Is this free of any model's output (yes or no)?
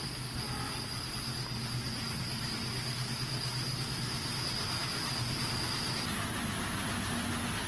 yes